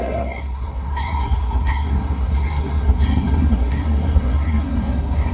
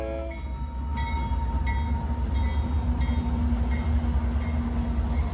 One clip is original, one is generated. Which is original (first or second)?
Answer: second